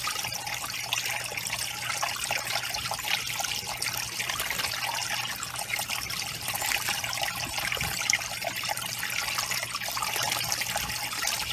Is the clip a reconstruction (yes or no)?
no